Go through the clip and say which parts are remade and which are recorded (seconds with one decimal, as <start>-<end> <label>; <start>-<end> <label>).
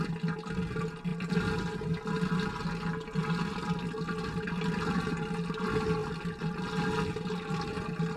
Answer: 0.0-8.2 recorded